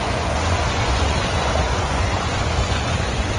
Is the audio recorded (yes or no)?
no